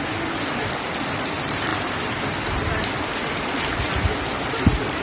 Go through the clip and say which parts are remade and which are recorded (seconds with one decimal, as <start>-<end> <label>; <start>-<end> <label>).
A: 0.0-5.0 recorded